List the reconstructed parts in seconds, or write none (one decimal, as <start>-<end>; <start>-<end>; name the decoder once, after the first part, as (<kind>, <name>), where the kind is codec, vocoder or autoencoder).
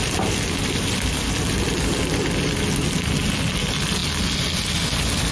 0.0-3.2 (vocoder, BigVGAN v2)